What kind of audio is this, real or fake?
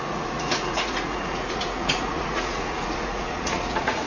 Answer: fake